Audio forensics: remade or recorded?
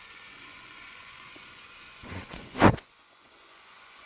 remade